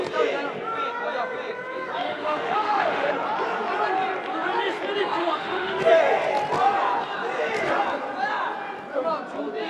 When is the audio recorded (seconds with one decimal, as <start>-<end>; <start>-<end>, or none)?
0.0-2.1; 3.1-5.2; 5.8-9.7